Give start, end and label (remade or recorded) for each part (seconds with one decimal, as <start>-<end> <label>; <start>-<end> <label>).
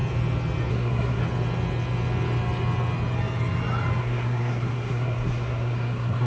0.0-0.7 recorded; 0.7-1.2 remade; 1.2-4.0 recorded; 4.0-6.3 remade